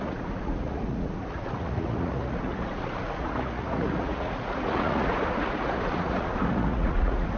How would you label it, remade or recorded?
remade